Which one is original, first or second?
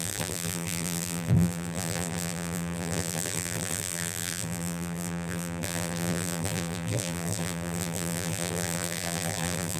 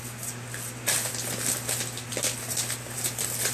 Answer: second